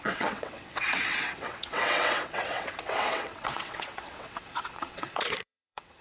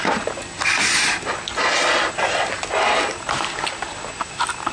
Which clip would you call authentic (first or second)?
second